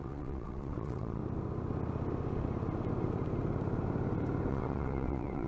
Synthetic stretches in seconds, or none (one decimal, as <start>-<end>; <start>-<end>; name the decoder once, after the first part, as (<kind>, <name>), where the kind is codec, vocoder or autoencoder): 0.0-1.2 (vocoder, WaveNeXt); 4.5-5.5